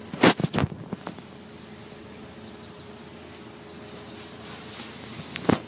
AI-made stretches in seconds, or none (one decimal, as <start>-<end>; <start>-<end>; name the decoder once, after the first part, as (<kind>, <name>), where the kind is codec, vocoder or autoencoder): none